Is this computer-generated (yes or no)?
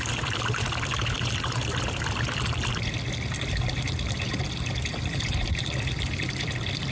no